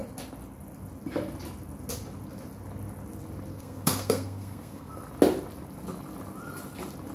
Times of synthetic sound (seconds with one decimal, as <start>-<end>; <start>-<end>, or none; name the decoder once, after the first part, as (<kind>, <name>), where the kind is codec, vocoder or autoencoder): 3.5-4.9 (codec, SNAC)